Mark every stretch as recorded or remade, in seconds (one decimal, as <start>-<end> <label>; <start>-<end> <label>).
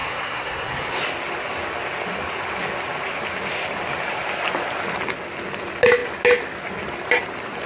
0.0-1.0 remade; 1.0-7.7 recorded